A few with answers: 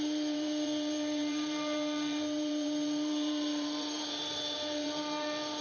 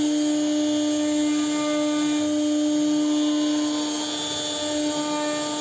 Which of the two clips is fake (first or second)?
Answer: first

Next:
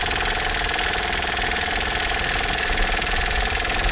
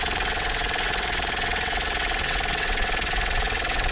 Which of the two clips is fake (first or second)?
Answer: second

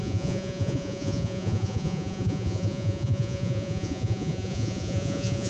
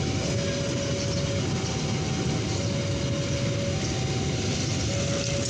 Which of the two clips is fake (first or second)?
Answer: first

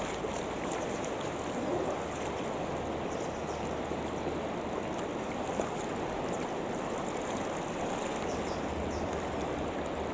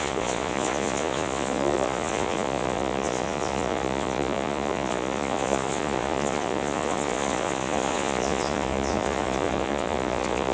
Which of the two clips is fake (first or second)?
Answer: second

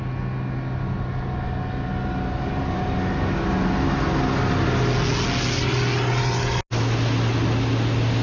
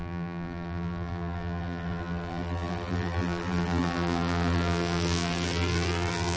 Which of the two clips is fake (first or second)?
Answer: second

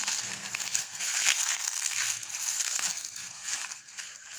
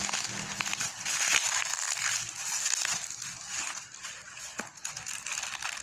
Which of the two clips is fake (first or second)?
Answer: first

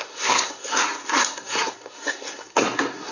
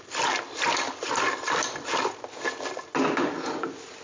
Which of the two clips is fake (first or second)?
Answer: first